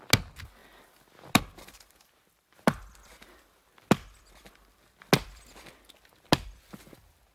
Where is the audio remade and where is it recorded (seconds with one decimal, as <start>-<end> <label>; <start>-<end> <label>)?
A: 0.0-0.6 recorded; 0.6-5.0 remade; 5.0-7.3 recorded

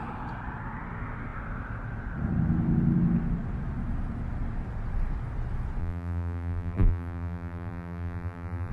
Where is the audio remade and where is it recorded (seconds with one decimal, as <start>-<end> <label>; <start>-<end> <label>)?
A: 0.0-5.8 recorded; 5.8-8.7 remade

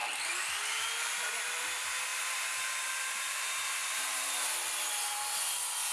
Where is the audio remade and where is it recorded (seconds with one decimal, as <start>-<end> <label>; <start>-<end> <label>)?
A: 0.0-0.8 recorded; 0.8-5.9 remade

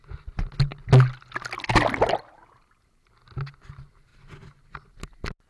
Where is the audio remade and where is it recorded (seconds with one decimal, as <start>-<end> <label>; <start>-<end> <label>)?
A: 0.0-5.5 recorded

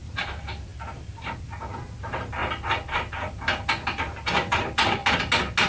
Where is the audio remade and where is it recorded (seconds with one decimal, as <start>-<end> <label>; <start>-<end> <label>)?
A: 0.0-0.7 remade; 0.7-2.0 recorded; 2.0-2.4 remade; 2.4-4.5 recorded; 4.5-5.0 remade; 5.0-5.7 recorded

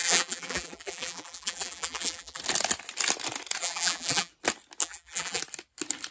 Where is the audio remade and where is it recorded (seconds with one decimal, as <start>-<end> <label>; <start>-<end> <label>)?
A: 0.0-2.4 remade; 2.4-3.6 recorded; 3.6-4.3 remade; 4.3-4.8 recorded; 4.8-5.4 remade; 5.4-6.1 recorded

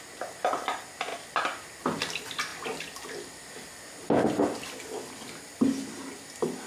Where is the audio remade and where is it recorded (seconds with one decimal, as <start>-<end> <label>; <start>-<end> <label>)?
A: 0.0-6.7 recorded